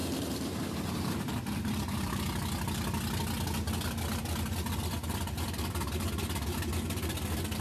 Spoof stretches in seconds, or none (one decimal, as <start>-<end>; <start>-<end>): 0.0-2.2